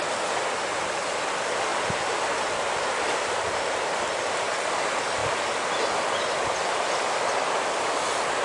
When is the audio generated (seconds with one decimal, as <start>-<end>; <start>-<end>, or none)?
1.7-4.0